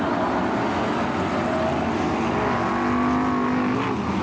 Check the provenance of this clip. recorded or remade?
recorded